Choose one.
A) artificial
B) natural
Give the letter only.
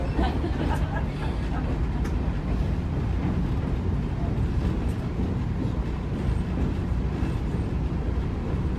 B